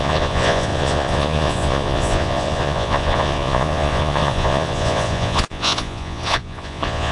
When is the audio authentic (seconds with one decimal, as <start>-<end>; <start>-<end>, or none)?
none